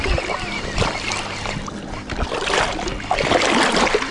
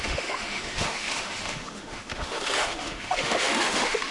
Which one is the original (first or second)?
first